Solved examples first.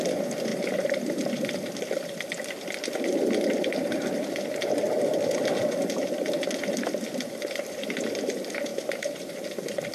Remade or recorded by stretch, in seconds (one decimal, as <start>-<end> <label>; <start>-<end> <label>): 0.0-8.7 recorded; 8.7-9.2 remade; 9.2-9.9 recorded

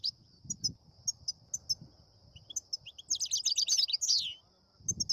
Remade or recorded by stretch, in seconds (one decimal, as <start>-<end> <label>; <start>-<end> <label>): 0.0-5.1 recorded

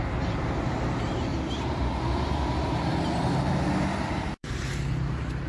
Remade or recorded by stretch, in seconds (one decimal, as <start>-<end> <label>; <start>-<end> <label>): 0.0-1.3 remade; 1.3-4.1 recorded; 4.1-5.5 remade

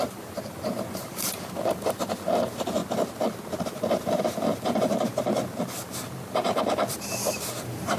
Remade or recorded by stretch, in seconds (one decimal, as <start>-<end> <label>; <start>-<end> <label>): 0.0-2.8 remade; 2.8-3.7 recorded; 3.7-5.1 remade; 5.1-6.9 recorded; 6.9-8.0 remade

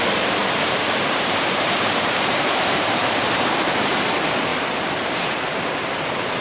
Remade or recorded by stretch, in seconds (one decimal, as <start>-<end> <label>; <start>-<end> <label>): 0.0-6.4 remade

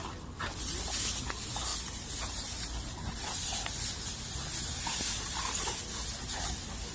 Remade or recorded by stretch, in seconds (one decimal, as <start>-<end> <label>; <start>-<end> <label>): 0.0-6.9 recorded